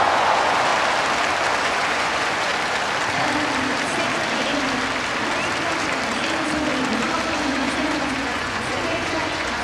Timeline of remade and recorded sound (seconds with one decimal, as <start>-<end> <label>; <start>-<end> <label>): 0.0-0.7 remade; 0.7-1.6 recorded; 1.6-2.5 remade; 2.5-7.3 recorded; 7.3-9.6 remade